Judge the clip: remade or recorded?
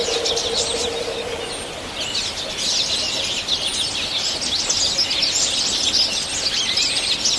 recorded